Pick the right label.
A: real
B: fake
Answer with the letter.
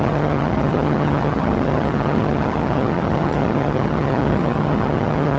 B